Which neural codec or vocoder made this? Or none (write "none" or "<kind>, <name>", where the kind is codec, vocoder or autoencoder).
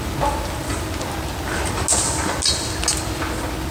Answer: none